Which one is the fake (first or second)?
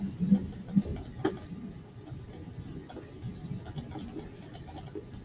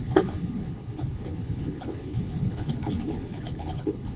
second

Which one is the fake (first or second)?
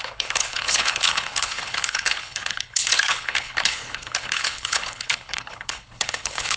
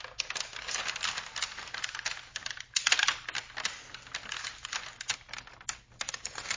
first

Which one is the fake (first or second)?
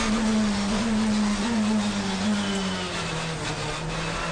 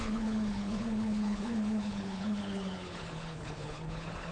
second